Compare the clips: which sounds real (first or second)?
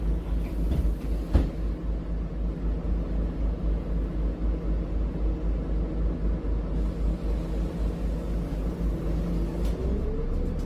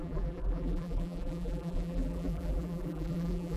first